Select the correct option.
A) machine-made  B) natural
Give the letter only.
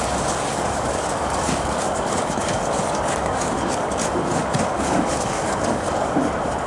A